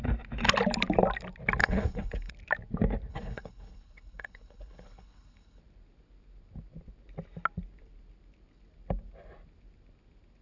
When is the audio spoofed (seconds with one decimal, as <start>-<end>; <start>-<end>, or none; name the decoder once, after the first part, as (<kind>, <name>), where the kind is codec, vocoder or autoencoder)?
1.6-2.3 (codec, HILCodec); 3.1-5.6